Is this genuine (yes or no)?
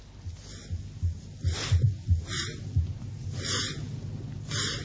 yes